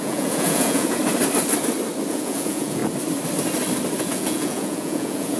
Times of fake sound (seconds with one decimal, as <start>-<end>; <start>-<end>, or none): 0.0-1.0; 2.1-2.8; 4.0-5.4